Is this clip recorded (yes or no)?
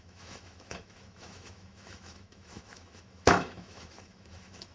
no